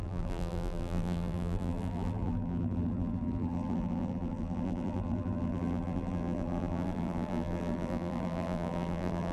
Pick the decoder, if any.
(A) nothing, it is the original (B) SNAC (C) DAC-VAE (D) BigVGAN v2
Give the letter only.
D